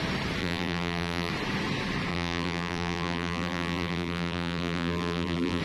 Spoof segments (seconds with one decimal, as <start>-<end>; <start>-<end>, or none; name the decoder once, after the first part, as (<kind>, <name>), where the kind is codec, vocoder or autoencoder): 0.4-1.3 (vocoder, BigVGAN v2); 2.1-5.6